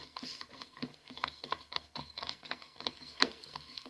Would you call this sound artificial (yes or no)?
yes